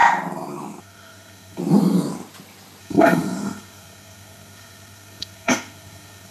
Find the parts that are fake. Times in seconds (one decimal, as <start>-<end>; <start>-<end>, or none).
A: 0.8-1.6; 2.8-6.3